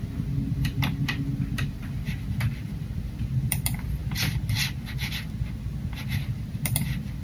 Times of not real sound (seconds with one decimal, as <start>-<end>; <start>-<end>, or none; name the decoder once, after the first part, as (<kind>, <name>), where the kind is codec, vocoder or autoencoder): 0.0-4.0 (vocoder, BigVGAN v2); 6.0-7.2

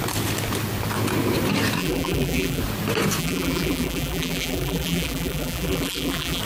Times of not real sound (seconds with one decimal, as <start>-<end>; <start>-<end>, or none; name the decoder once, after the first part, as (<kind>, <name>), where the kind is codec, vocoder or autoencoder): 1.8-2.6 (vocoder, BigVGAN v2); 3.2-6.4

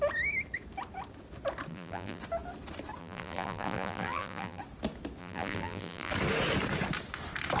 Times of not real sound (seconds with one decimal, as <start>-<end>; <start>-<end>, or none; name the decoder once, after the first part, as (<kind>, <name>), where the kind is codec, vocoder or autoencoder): 1.7-2.2 (vocoder, BigVGAN v2); 3.0-4.6; 5.2-6.1

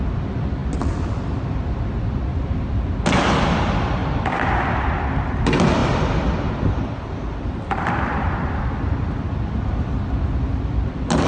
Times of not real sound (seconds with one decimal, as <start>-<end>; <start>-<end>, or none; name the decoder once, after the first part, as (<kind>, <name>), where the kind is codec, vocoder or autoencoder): 2.3-2.9 (vocoder, BigVGAN v2); 5.8-8.7

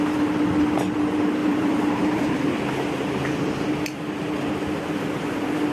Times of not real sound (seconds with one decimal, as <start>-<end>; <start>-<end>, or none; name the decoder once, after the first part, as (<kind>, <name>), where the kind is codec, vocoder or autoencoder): 1.4-2.3 (vocoder, BigVGAN v2)